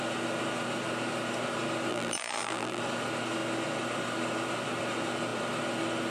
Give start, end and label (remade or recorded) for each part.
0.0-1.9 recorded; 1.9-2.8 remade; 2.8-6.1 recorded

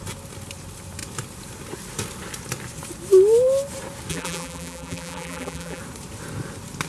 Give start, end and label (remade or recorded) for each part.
0.0-4.1 recorded; 4.1-5.8 remade; 5.8-6.9 recorded

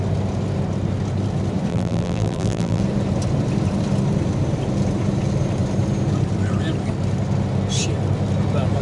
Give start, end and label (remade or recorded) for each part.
0.0-1.7 recorded; 1.7-2.8 remade; 2.8-8.8 recorded

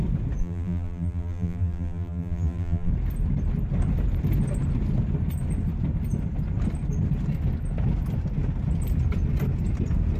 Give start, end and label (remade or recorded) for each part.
0.0-0.4 recorded; 0.4-2.9 remade; 2.9-10.2 recorded

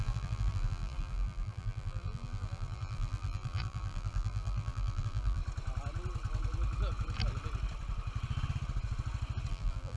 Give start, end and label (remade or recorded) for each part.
0.0-5.4 remade; 5.4-9.5 recorded; 9.5-10.0 remade

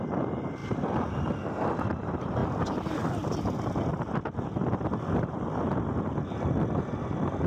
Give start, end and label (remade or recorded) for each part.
0.0-2.4 remade; 2.4-5.2 recorded; 5.2-7.5 remade

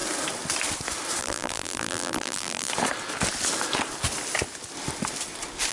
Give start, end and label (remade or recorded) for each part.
0.0-1.2 recorded; 1.2-2.7 remade; 2.7-5.7 recorded

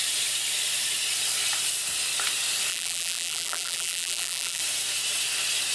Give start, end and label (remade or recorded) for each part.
0.0-2.7 recorded; 2.7-4.6 remade; 4.6-5.7 recorded